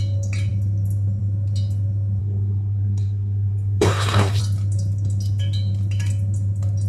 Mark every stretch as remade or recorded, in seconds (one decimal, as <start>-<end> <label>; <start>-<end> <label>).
0.0-2.2 recorded; 2.2-4.4 remade; 4.4-6.9 recorded